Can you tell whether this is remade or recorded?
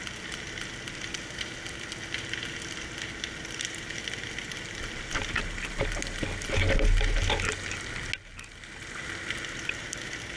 recorded